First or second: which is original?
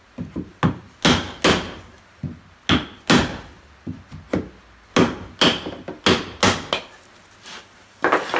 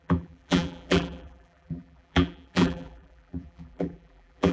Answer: first